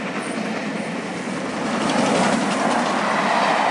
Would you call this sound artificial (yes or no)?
no